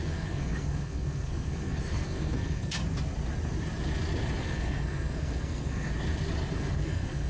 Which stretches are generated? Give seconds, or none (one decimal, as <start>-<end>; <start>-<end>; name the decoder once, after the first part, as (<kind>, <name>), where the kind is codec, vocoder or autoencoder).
0.0-2.8 (codec, SNAC); 4.4-5.9; 6.5-7.3